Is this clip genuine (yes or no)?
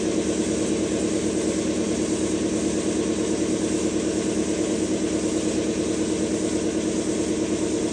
yes